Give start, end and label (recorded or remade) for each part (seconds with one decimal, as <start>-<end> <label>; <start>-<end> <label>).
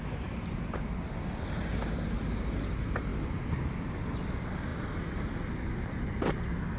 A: 0.0-6.8 recorded